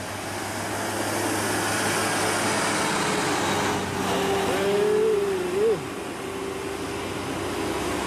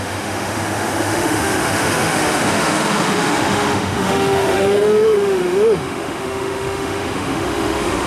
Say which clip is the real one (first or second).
first